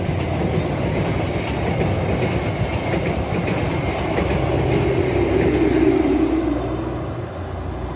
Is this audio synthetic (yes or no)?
no